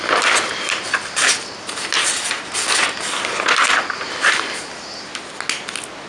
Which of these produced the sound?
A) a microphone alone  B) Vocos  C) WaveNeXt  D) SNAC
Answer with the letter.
A